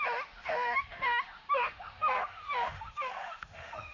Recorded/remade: remade